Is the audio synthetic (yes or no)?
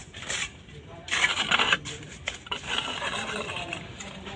no